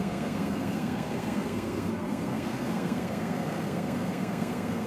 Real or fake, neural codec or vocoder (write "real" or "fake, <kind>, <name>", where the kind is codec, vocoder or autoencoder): fake, codec, SNAC